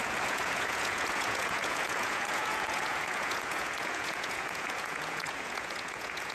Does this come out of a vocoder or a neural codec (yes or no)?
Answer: yes